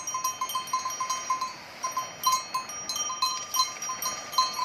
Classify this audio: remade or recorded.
recorded